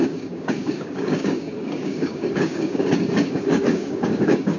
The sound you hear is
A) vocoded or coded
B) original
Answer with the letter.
A